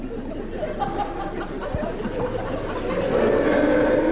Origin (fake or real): real